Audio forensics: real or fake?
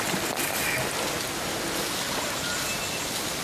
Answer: real